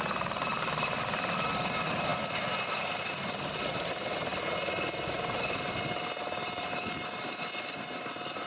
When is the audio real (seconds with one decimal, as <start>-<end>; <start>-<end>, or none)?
0.0-8.5